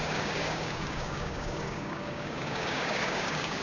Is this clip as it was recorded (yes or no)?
no